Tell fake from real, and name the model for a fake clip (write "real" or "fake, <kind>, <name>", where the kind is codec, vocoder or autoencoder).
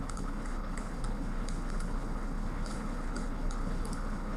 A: fake, codec, HILCodec